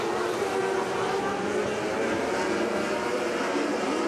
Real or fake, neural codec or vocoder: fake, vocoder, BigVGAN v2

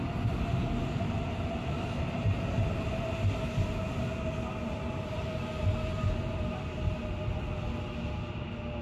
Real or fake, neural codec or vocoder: real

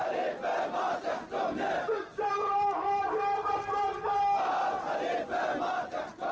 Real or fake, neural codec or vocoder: real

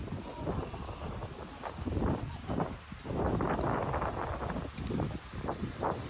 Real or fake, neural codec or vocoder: real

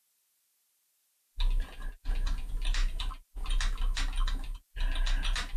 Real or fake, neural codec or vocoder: real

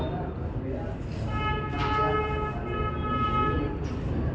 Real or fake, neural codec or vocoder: real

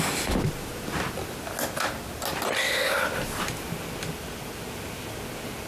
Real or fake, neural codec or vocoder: real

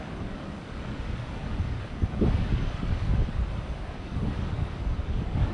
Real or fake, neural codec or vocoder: fake, codec, DAC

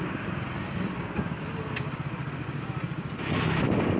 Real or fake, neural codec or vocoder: real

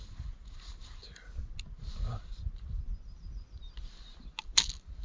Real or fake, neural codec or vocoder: real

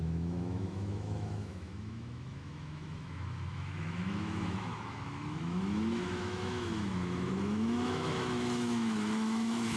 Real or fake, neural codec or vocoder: fake, autoencoder, DAC-VAE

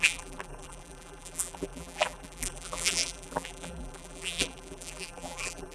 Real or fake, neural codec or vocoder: fake, vocoder, BigVGAN v2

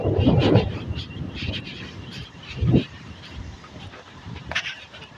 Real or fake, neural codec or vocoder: fake, vocoder, BigVGAN v2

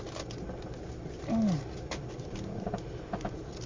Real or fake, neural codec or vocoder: real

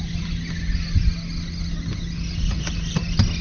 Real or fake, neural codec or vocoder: real